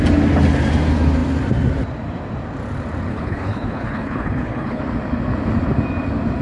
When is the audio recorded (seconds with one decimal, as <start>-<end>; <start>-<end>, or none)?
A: 0.0-3.1; 4.8-6.4